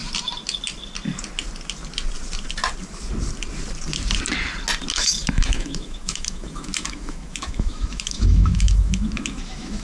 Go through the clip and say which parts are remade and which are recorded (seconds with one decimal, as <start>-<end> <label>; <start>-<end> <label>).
0.0-4.9 recorded; 4.9-9.8 remade